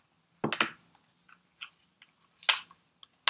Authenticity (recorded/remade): recorded